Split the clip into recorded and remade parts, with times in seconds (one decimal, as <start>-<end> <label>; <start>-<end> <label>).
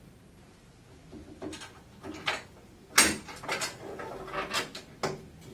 0.0-5.5 recorded